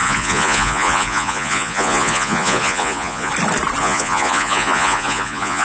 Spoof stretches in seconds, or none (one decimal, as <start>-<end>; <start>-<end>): 0.0-3.3; 3.8-5.6